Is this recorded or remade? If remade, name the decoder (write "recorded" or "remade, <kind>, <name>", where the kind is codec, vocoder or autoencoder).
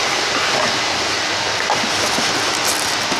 recorded